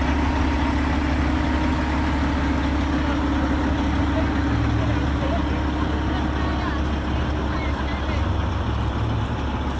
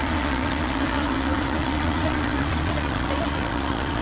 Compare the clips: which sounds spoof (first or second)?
second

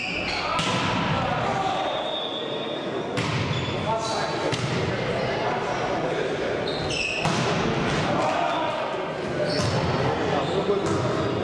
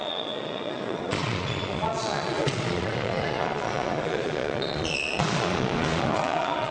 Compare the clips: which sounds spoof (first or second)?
second